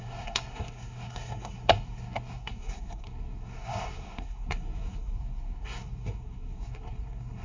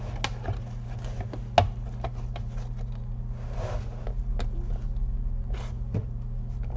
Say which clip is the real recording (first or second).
second